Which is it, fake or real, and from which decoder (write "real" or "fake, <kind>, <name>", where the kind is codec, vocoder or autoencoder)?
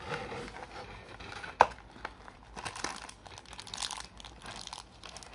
real